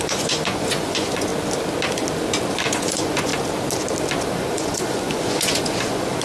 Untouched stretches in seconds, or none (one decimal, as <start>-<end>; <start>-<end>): 1.3-2.6; 3.3-4.3